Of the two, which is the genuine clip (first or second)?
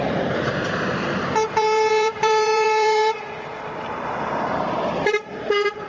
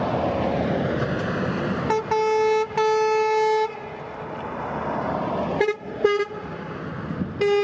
second